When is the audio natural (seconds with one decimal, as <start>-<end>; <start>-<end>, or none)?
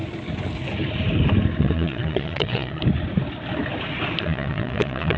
0.0-1.6; 2.8-4.2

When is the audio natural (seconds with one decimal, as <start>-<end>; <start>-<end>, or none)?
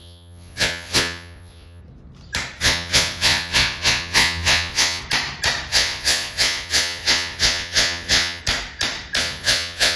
1.8-2.6; 5.0-5.7; 8.4-9.2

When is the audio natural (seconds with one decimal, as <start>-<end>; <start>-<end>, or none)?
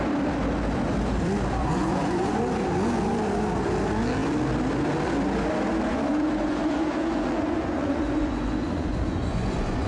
0.0-1.6; 2.4-5.9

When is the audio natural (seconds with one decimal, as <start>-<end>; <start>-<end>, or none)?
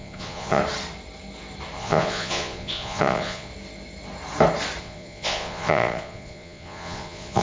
0.6-1.8; 3.5-4.8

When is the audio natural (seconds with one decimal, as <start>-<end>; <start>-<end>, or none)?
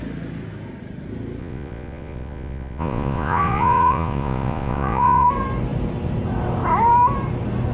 0.0-1.4; 5.3-7.7